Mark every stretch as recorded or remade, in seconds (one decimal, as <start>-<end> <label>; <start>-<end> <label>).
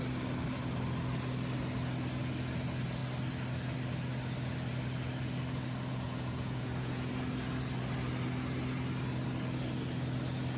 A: 0.0-5.9 recorded; 5.9-7.1 remade; 7.1-10.6 recorded